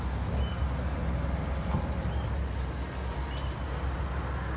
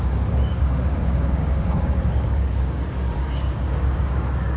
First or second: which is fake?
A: second